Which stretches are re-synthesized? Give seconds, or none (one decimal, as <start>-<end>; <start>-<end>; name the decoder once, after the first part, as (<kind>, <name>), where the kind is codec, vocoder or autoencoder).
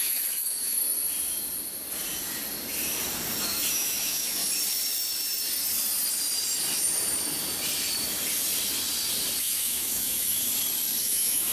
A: 0.0-0.8 (autoencoder, DAC-VAE); 3.7-4.4; 9.4-10.5; 11.0-11.5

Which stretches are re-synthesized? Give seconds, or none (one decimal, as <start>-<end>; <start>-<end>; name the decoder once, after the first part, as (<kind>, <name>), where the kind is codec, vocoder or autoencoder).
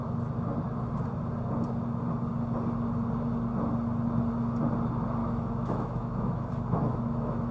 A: 5.2-7.5 (autoencoder, DAC-VAE)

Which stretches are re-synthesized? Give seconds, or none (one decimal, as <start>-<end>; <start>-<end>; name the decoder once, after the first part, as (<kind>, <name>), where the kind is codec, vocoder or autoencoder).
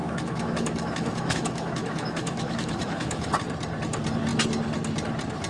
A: 0.0-3.3 (autoencoder, DAC-VAE)